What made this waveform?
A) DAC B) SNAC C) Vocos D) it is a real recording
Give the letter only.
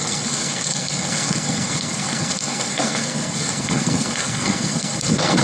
B